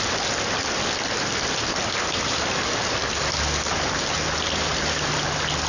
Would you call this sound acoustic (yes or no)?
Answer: yes